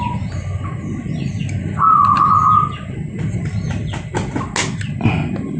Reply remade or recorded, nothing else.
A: recorded